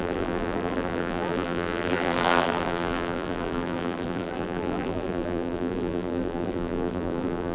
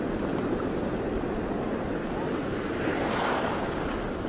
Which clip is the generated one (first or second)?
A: first